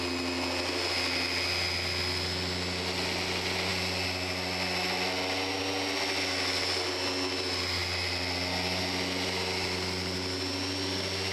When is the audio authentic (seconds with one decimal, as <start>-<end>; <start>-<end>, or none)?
0.0-11.3